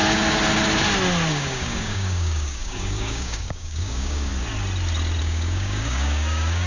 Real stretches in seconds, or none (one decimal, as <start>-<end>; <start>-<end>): 0.0-1.3; 4.3-5.2